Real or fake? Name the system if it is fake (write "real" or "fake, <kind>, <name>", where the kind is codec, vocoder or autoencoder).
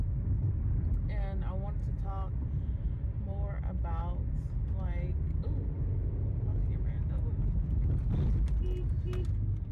real